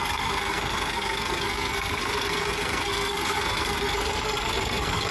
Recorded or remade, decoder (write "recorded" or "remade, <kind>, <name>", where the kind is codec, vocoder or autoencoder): remade, codec, SNAC